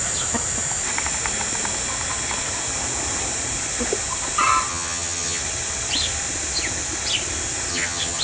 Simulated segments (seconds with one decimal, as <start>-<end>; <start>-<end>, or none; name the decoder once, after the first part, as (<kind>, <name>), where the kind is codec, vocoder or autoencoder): 4.7-5.4 (vocoder, HiFi-GAN); 7.7-8.2